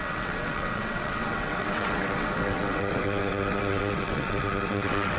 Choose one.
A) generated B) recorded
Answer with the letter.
A